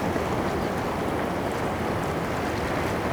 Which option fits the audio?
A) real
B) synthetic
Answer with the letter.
A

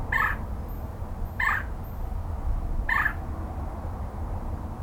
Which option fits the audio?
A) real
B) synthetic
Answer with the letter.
A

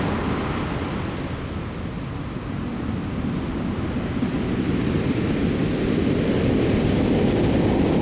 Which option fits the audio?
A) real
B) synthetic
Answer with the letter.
A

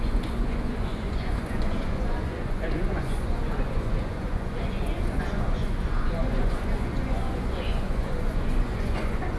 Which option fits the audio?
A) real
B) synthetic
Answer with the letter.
B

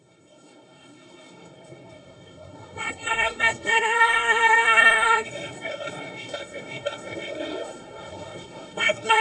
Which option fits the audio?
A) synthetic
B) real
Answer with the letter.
A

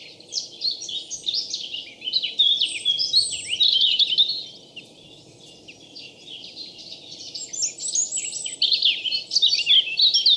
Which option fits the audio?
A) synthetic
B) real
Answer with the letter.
B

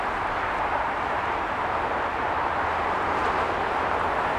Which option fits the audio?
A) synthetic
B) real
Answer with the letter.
B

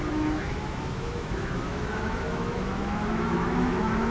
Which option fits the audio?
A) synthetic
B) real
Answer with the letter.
A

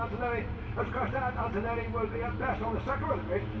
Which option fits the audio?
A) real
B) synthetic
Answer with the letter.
A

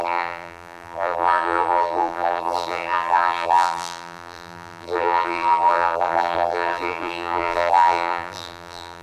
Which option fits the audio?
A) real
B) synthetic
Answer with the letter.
B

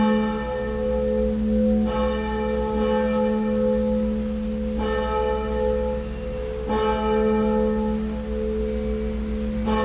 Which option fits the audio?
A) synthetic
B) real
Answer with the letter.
B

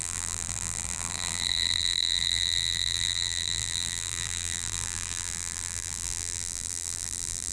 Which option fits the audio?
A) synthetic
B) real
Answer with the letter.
A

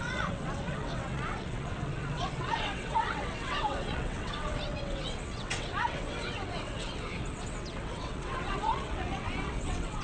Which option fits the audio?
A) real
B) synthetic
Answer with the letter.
B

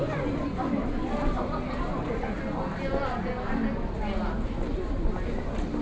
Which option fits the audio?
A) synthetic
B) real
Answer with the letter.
B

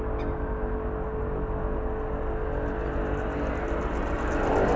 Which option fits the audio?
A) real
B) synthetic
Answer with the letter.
A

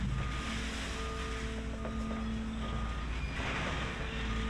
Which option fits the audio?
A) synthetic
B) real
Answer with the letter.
B